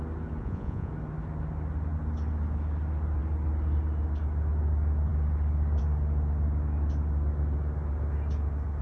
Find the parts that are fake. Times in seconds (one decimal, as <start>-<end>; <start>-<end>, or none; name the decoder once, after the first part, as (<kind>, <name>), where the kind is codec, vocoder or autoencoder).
0.4-0.9 (vocoder, Vocos)